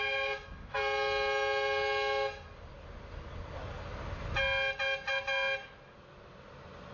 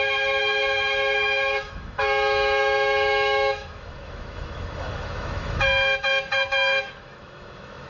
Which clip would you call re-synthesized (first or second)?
second